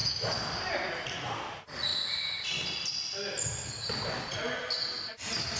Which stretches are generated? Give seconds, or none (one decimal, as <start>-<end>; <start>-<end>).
0.0-0.5

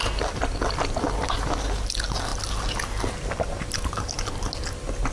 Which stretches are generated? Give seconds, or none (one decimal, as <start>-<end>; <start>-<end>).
none

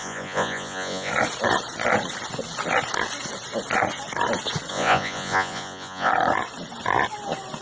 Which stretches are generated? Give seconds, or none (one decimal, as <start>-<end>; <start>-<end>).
0.0-1.1; 4.7-6.1

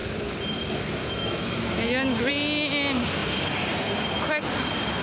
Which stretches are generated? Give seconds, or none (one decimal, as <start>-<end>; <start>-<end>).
1.0-2.3